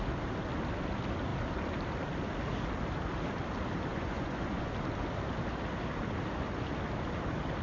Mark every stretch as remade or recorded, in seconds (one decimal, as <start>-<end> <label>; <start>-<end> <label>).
0.0-3.9 recorded; 3.9-4.7 remade; 4.7-7.6 recorded